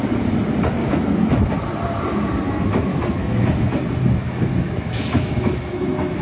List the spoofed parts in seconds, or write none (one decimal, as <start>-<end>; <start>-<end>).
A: 0.8-1.4; 2.9-3.6; 4.2-6.2